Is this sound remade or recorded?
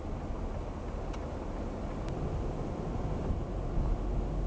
recorded